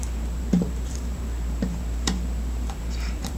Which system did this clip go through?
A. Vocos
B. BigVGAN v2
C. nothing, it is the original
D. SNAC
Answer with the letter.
B